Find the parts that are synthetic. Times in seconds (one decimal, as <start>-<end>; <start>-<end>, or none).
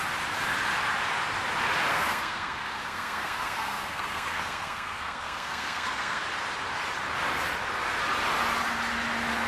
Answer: 1.9-6.2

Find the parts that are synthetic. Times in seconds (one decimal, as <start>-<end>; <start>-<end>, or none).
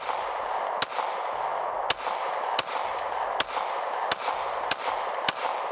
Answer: none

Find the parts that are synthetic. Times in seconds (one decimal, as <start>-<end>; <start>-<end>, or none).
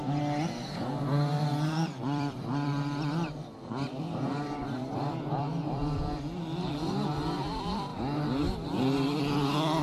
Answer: 1.5-6.0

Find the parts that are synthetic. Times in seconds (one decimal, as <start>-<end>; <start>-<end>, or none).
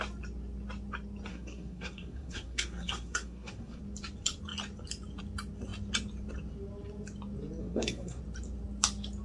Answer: 1.3-3.8; 7.6-8.2